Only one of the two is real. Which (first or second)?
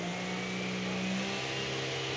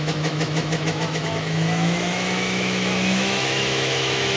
first